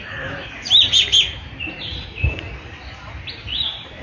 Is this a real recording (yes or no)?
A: no